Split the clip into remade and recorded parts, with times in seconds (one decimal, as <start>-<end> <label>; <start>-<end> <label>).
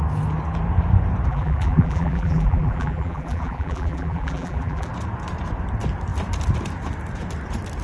0.0-1.3 recorded; 1.3-4.9 remade; 4.9-7.8 recorded